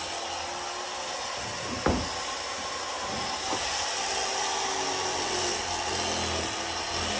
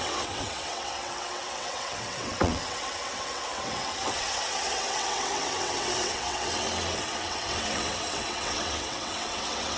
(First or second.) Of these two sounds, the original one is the first